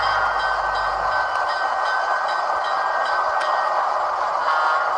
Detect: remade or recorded recorded